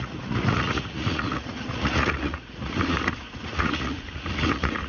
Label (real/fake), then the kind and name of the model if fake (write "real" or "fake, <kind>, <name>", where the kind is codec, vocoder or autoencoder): fake, vocoder, Vocos